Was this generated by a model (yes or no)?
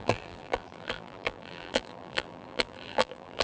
yes